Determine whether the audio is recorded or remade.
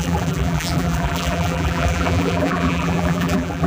remade